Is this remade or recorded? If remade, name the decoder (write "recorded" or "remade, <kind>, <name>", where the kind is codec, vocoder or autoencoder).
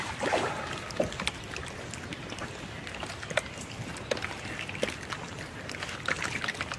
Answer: recorded